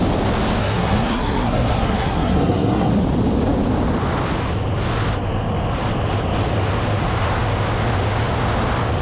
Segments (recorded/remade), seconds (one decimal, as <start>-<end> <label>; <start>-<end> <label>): 0.0-0.6 recorded; 0.6-2.9 remade; 2.9-9.0 recorded